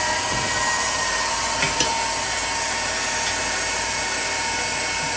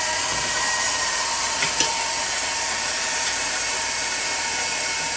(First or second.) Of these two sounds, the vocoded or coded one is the second